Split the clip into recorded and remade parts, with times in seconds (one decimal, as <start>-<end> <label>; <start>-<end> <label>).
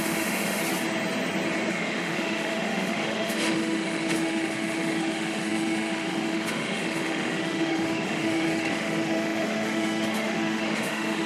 0.0-0.6 remade; 0.6-1.7 recorded; 1.7-11.3 remade